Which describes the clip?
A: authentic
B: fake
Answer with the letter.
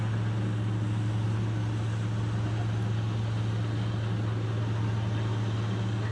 A